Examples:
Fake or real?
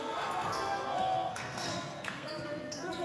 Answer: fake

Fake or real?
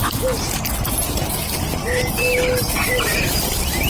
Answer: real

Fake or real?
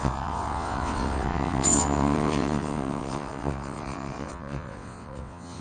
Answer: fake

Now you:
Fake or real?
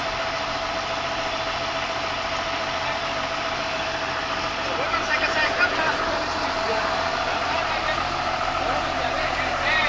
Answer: fake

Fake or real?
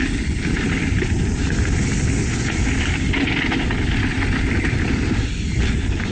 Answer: real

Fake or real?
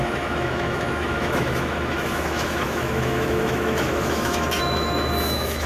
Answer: fake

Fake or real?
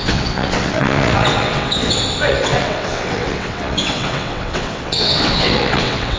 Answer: fake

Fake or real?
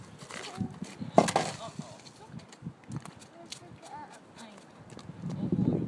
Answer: real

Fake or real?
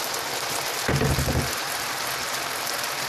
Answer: real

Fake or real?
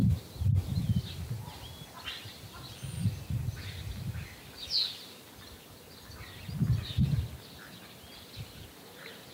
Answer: real